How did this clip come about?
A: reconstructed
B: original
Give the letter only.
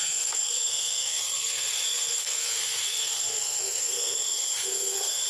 A